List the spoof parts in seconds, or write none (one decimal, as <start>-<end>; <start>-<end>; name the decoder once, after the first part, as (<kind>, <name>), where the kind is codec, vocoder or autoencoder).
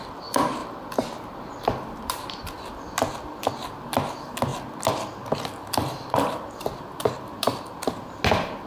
0.6-2.3 (vocoder, BigVGAN v2)